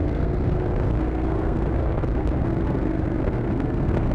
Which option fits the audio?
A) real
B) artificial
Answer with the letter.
B